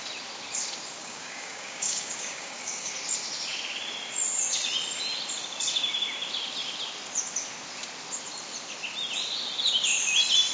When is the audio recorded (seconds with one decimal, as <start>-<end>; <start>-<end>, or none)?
0.0-1.0; 2.9-10.5